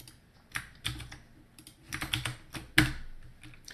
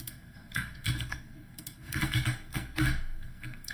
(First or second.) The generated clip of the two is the second